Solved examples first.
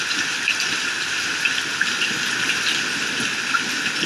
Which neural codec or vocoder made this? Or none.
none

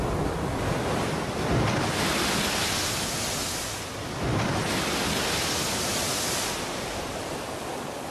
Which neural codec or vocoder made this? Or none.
none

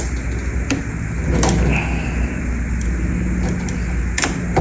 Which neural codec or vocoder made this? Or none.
none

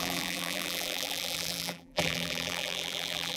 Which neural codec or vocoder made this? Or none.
vocoder, BigVGAN v2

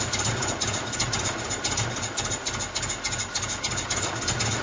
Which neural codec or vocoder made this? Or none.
none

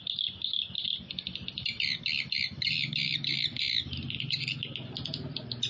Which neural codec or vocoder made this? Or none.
none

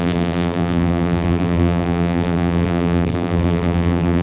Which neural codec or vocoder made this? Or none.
vocoder, BigVGAN v2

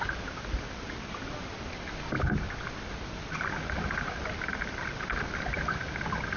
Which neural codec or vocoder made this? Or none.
none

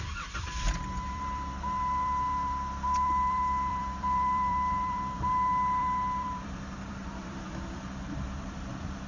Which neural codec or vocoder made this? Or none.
vocoder, BigVGAN v2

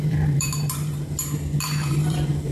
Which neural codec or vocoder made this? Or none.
vocoder, BigVGAN v2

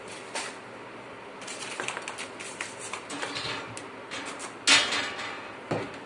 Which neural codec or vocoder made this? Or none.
none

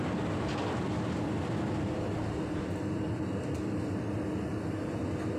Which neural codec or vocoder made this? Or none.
none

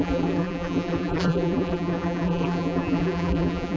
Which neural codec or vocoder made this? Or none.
vocoder, BigVGAN v2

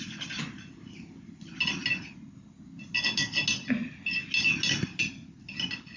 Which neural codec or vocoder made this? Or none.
none